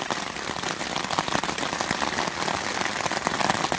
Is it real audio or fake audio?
real